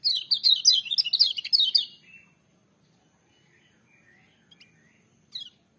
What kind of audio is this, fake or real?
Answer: real